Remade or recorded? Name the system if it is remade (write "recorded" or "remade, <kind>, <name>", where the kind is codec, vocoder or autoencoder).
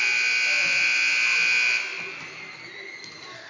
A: recorded